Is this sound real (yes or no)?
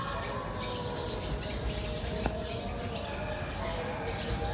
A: yes